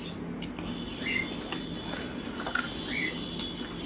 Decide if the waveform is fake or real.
real